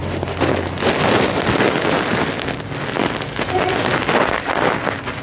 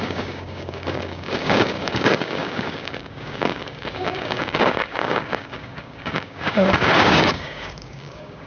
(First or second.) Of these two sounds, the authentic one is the first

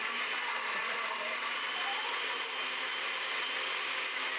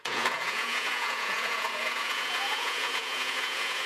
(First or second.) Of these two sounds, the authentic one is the first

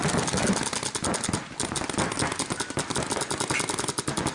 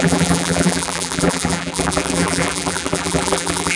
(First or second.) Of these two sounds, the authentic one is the first